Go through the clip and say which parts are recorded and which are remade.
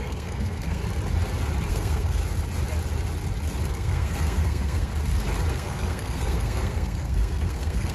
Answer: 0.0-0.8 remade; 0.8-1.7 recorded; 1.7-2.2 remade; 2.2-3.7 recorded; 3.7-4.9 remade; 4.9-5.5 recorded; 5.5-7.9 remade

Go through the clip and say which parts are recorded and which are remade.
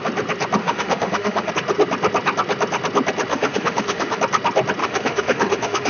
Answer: 0.0-0.6 recorded; 0.6-1.5 remade; 1.5-3.3 recorded; 3.3-4.2 remade; 4.2-4.8 recorded; 4.8-5.9 remade